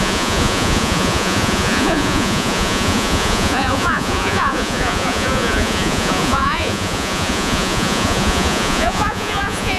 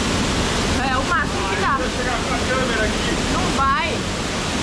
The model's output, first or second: first